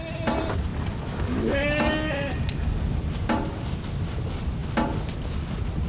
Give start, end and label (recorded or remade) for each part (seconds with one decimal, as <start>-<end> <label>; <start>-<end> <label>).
0.0-5.9 recorded